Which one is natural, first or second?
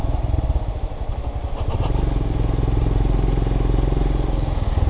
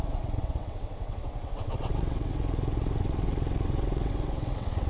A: first